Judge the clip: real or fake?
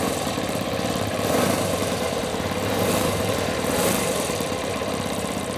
fake